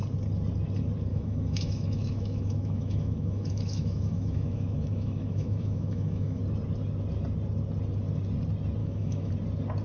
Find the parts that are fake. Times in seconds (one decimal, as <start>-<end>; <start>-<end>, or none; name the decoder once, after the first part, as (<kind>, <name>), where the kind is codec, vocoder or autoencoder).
1.1-6.4 (autoencoder, DAC-VAE); 8.8-9.3